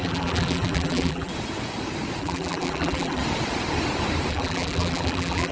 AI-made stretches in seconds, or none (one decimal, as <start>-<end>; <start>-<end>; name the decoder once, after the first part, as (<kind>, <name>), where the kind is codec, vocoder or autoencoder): 0.0-1.3 (vocoder, BigVGAN v2); 2.2-3.2; 4.3-5.5